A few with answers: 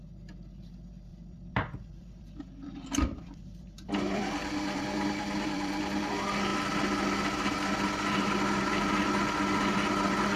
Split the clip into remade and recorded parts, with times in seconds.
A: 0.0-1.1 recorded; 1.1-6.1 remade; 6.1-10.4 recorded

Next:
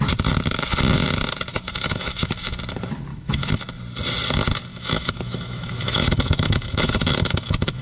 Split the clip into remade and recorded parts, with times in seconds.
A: 0.0-1.5 recorded; 1.5-2.3 remade; 2.3-3.1 recorded; 3.1-3.6 remade; 3.6-4.7 recorded; 4.7-7.8 remade

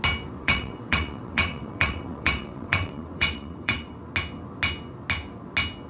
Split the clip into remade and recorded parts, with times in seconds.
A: 0.0-0.4 recorded; 0.4-3.9 remade; 3.9-5.9 recorded

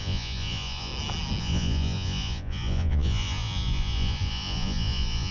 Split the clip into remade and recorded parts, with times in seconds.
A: 0.0-0.9 remade; 0.9-1.4 recorded; 1.4-5.3 remade

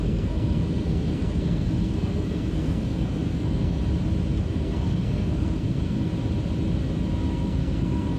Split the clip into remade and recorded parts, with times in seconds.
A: 0.0-3.8 remade; 3.8-4.4 recorded; 4.4-6.1 remade; 6.1-7.3 recorded; 7.3-8.2 remade